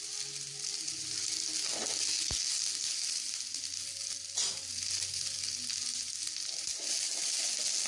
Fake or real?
real